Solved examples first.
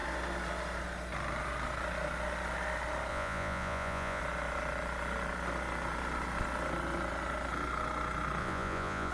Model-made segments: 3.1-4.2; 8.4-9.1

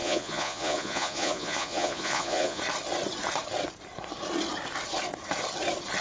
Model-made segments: 0.0-2.6

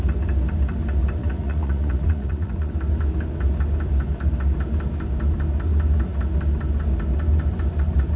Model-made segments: 1.2-2.7